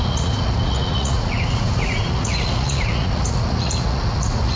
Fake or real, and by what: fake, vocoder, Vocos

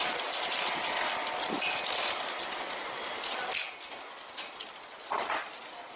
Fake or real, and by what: real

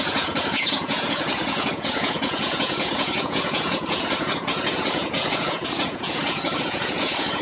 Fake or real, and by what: fake, vocoder, Vocos